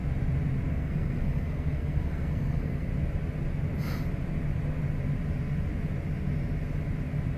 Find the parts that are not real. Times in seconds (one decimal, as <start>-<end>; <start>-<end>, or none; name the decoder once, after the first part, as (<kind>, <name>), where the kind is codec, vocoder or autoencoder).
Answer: 0.7-2.9 (codec, SNAC)